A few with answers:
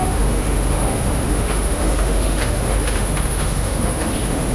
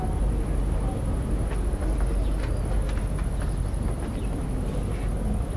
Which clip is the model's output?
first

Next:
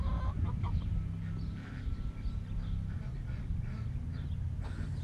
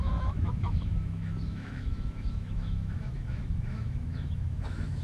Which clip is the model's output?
second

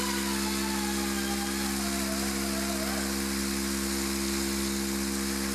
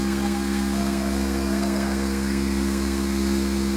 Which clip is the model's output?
second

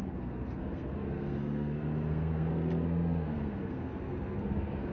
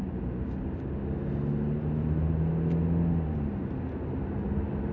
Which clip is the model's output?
first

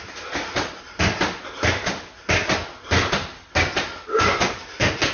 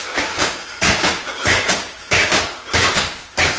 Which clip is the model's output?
second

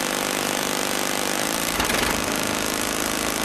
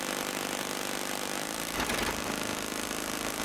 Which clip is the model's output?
first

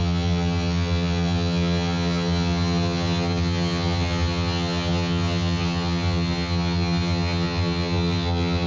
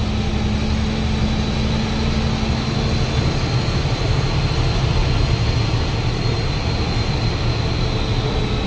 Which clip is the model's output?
first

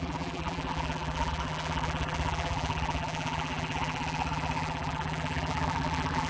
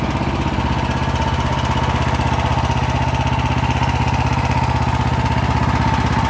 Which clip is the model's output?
first